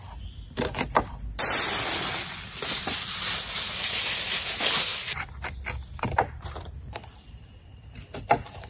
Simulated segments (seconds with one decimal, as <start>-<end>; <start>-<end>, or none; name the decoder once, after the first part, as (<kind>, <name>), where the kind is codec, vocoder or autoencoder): 0.0-4.0 (vocoder, BigVGAN v2); 4.9-7.3